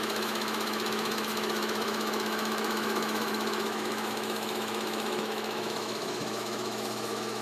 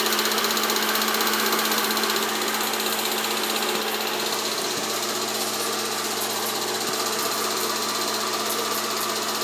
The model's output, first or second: first